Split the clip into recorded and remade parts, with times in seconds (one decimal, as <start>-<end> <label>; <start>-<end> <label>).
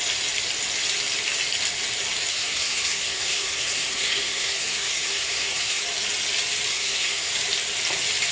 0.0-2.3 recorded; 2.3-5.8 remade; 5.8-6.7 recorded; 6.7-7.3 remade; 7.3-8.3 recorded